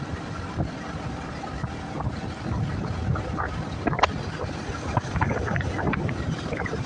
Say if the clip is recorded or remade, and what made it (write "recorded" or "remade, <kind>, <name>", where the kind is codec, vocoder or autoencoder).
recorded